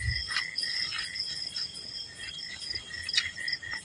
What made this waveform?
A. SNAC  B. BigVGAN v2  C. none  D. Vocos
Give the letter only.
C